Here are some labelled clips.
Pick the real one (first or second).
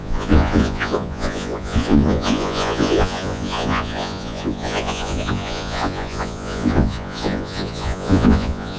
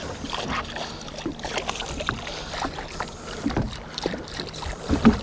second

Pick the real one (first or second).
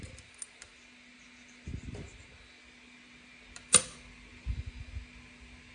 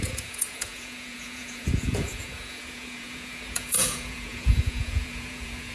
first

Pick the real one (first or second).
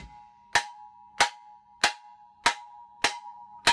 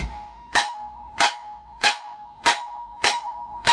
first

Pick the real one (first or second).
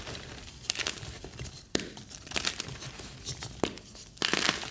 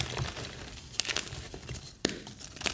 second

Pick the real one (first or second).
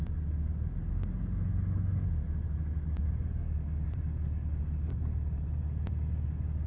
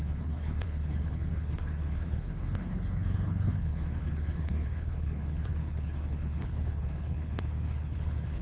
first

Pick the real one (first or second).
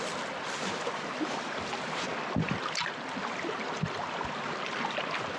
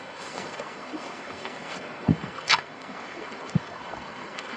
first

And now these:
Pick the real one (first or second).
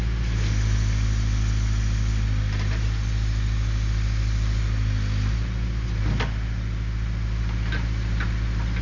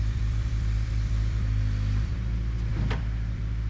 first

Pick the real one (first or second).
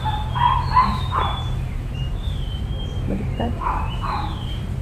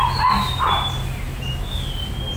second